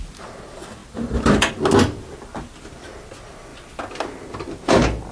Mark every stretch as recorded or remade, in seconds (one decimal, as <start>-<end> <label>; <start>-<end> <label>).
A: 0.0-0.8 recorded; 0.8-1.5 remade; 1.5-5.1 recorded